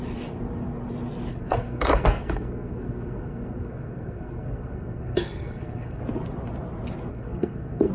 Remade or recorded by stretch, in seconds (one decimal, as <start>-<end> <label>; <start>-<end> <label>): 0.0-1.3 recorded; 1.3-6.0 remade; 6.0-7.1 recorded; 7.1-7.9 remade